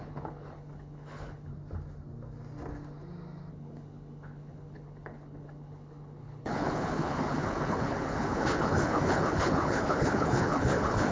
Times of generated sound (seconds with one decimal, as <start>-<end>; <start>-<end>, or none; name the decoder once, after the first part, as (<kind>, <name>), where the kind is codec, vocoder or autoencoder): 0.0-1.5 (codec, HILCodec); 3.5-11.1